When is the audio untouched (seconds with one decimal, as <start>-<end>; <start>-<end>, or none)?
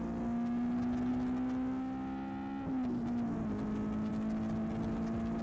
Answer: 0.0-5.4